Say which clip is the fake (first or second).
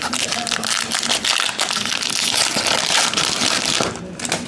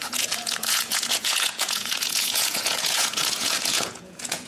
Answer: second